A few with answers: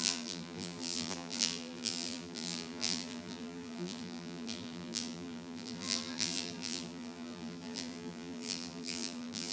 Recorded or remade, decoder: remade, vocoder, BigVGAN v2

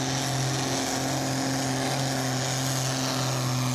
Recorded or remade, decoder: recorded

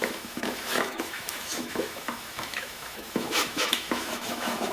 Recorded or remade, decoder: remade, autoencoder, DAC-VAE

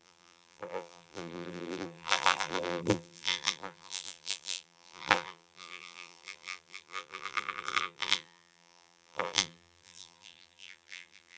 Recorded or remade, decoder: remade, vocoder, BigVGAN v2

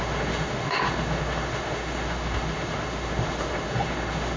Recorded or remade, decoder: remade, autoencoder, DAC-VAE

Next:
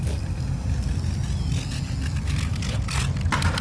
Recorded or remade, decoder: recorded